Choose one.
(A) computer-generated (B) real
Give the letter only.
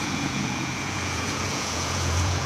A